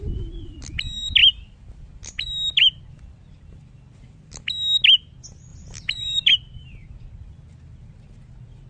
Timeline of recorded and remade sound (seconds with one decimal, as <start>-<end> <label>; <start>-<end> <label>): 0.0-1.2 recorded; 1.2-2.8 remade; 2.8-5.5 recorded; 5.5-6.3 remade; 6.3-8.7 recorded